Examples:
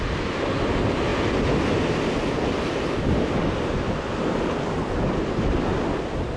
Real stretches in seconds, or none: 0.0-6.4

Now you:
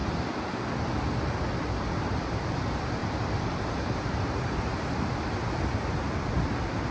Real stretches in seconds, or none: 0.0-3.0; 5.6-6.9

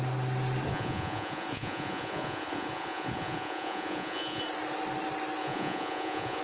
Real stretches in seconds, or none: 0.0-0.7; 4.4-5.4

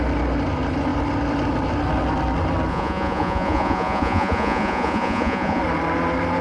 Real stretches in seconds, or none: 0.0-2.7; 5.6-6.4

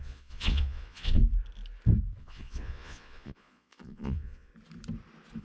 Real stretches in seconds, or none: 1.2-2.2; 4.5-5.4